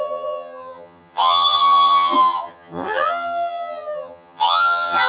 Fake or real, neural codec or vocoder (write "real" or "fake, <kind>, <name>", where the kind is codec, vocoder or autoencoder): fake, vocoder, HiFi-GAN